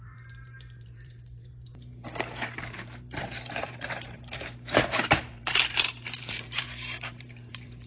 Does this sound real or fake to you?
fake